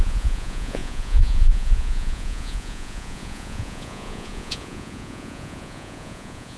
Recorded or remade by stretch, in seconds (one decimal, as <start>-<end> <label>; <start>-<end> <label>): 0.0-6.6 remade

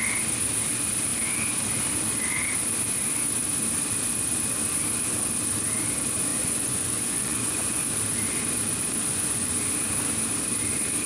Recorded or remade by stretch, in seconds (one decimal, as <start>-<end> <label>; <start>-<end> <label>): 0.0-6.3 recorded; 6.3-7.8 remade; 7.8-9.1 recorded; 9.1-9.7 remade; 9.7-11.1 recorded

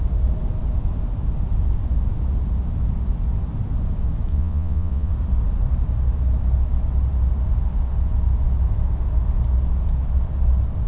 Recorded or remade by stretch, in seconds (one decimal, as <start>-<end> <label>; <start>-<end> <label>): 0.0-4.3 recorded; 4.3-5.1 remade; 5.1-10.9 recorded

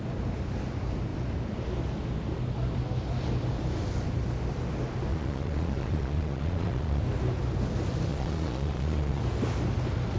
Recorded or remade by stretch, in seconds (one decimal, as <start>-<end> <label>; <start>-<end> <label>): 0.0-5.1 recorded; 5.1-7.0 remade; 7.0-8.1 recorded; 8.1-9.2 remade; 9.2-10.2 recorded

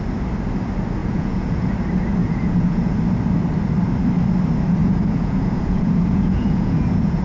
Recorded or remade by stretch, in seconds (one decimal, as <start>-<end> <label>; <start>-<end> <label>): 0.0-1.0 recorded; 1.0-1.7 remade; 1.7-2.2 recorded; 2.2-3.0 remade; 3.0-4.8 recorded; 4.8-7.2 remade